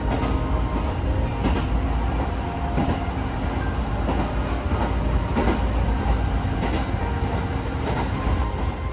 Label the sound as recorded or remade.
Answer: recorded